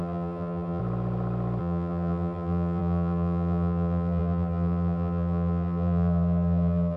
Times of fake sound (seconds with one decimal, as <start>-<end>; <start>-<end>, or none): 0.0-0.8; 1.6-7.0